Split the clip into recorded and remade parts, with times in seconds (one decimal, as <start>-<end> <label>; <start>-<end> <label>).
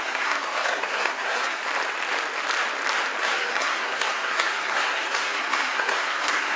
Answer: 0.0-1.6 remade; 1.6-3.2 recorded; 3.2-6.6 remade